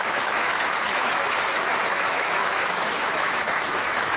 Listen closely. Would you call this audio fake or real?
fake